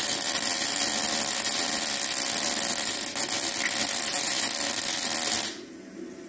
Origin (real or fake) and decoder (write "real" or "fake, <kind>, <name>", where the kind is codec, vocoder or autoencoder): real